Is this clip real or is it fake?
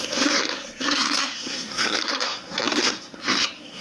fake